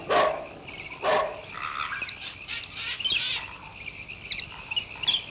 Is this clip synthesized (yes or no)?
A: no